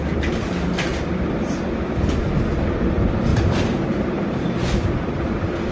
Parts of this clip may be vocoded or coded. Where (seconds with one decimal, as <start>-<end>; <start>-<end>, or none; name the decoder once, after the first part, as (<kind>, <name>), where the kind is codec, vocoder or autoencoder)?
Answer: 0.9-1.6 (vocoder, BigVGAN v2); 3.3-4.6